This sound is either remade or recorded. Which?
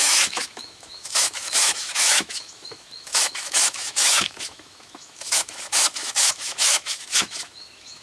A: remade